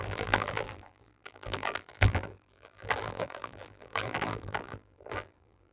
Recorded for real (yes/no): no